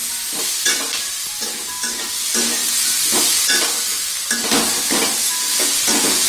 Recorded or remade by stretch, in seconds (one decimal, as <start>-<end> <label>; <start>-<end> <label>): 0.0-5.5 recorded; 5.5-6.3 remade